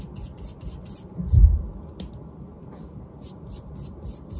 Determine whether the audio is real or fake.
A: real